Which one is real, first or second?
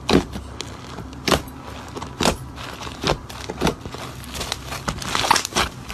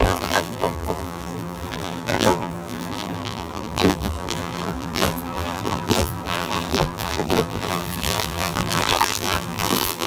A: first